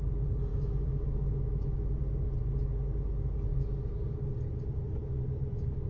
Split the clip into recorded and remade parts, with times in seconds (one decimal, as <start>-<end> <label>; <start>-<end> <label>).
0.0-0.5 recorded; 0.5-2.0 remade; 2.0-5.9 recorded